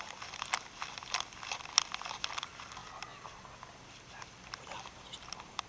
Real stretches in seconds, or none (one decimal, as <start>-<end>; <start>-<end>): 0.0-5.7